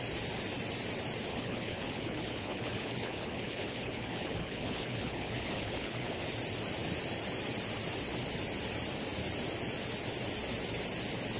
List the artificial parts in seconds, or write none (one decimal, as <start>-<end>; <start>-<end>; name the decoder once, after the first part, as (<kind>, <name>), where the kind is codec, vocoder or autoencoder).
1.3-6.2 (codec, HILCodec)